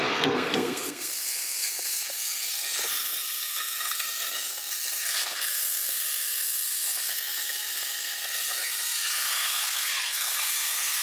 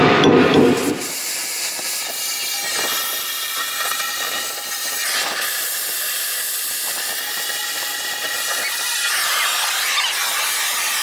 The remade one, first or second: first